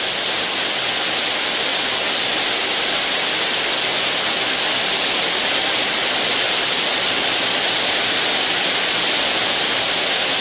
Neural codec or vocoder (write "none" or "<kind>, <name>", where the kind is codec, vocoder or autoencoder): none